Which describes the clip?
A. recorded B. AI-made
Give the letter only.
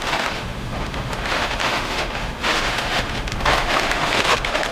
B